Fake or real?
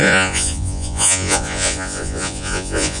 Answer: fake